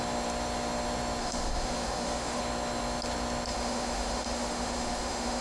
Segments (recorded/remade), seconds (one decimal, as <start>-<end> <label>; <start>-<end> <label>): 0.0-1.2 recorded; 1.2-2.4 remade; 2.4-3.5 recorded; 3.5-5.4 remade